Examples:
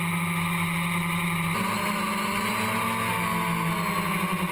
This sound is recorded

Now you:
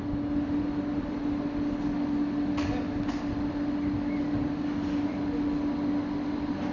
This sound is recorded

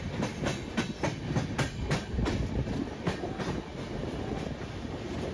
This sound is recorded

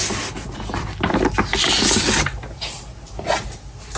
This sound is recorded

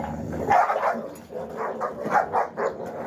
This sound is recorded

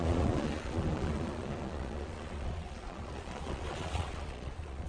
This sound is remade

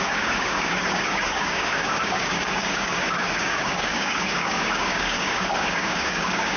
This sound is remade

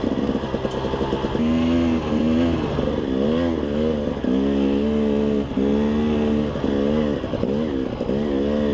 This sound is recorded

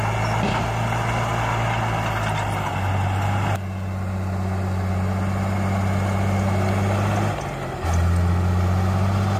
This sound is recorded